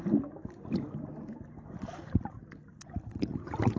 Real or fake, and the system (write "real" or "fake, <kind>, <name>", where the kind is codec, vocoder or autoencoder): real